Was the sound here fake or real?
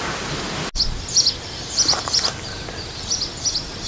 real